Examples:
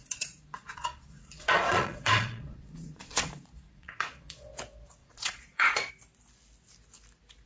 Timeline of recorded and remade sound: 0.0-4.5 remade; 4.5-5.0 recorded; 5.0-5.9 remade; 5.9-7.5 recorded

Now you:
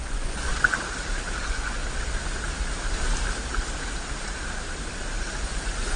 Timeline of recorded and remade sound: 0.0-0.5 remade; 0.5-1.4 recorded; 1.4-1.8 remade; 1.8-5.4 recorded; 5.4-6.0 remade

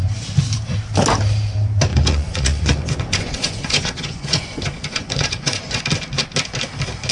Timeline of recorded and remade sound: 0.0-1.9 recorded; 1.9-5.8 remade; 5.8-7.1 recorded

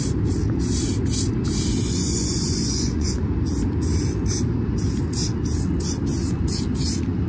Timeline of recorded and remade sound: 0.0-1.8 recorded; 1.8-3.2 remade; 3.2-7.3 recorded

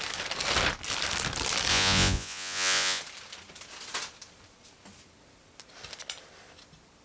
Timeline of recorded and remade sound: 0.0-1.7 recorded; 1.7-3.0 remade; 3.0-7.0 recorded

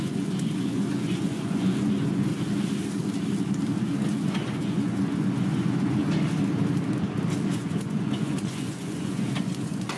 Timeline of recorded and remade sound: 0.0-2.3 remade; 2.3-4.1 recorded; 4.1-6.0 remade; 6.0-7.5 recorded; 7.5-10.0 remade

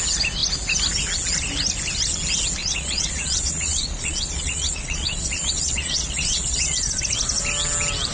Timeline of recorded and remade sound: 0.0-2.6 recorded; 2.6-7.0 remade; 7.0-8.1 recorded

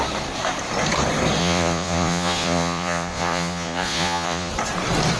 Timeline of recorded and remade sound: 0.0-1.4 recorded; 1.4-4.5 remade; 4.5-5.2 recorded